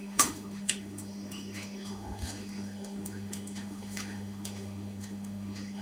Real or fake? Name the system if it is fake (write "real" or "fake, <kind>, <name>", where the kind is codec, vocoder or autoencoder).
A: fake, autoencoder, DAC-VAE